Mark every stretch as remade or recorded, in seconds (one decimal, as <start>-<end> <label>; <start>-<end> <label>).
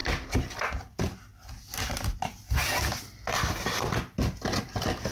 0.0-5.1 recorded